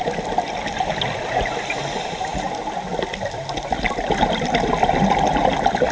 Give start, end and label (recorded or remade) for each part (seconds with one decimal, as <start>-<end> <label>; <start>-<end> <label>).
0.0-5.9 recorded

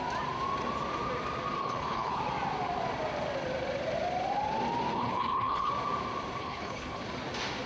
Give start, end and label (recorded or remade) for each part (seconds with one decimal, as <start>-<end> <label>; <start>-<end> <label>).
0.0-1.6 recorded; 1.6-2.2 remade; 2.2-4.9 recorded; 4.9-5.7 remade; 5.7-6.4 recorded; 6.4-7.0 remade; 7.0-7.7 recorded

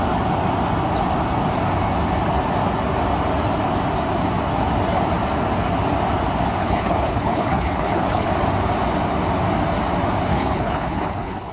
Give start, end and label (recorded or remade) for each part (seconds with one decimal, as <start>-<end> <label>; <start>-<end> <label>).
0.0-6.6 recorded; 6.6-8.3 remade; 8.3-10.3 recorded; 10.3-11.5 remade

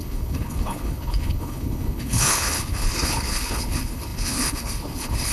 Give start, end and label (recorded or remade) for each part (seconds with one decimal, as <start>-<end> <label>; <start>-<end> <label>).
0.0-5.3 remade

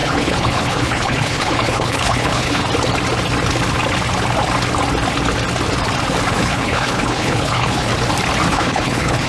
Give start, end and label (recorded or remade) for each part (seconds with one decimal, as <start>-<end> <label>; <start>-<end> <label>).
0.0-2.6 remade; 2.6-6.3 recorded; 6.3-7.9 remade; 7.9-8.5 recorded; 8.5-9.3 remade

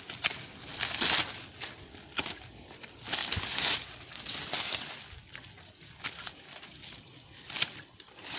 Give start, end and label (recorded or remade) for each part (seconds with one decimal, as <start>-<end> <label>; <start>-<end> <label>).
0.0-8.4 recorded